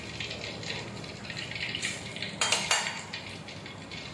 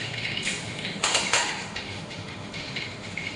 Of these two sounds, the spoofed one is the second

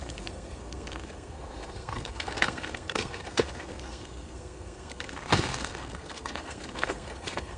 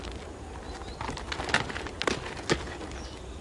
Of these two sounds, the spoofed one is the first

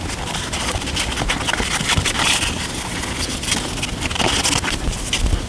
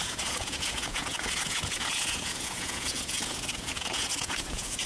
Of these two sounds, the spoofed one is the second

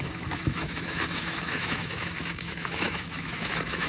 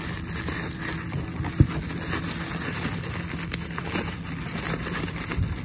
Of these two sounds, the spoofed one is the first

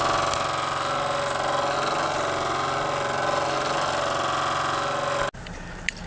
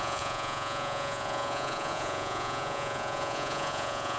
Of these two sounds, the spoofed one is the second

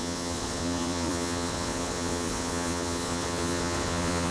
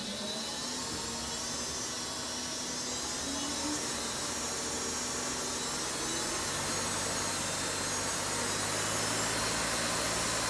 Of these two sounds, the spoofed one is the first